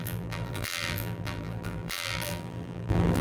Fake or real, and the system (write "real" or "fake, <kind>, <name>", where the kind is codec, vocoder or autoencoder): fake, vocoder, BigVGAN v2